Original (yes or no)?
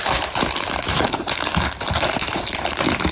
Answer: no